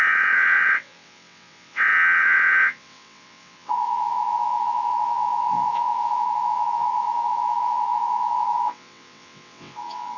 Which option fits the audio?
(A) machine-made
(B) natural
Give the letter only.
A